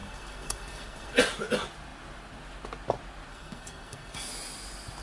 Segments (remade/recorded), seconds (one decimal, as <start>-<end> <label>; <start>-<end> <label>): 0.0-1.2 remade; 1.2-3.3 recorded; 3.3-4.3 remade; 4.3-5.0 recorded